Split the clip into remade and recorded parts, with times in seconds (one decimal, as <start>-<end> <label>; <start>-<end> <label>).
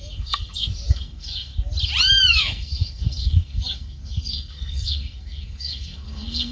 0.0-1.5 remade; 1.5-2.3 recorded; 2.3-6.5 remade